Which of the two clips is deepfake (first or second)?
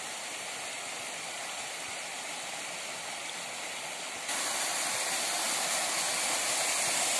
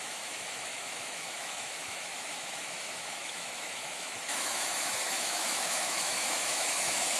second